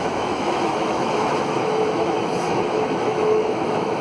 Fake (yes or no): yes